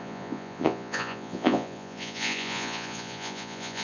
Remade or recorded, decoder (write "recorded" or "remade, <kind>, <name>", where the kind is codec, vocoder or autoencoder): remade, vocoder, Vocos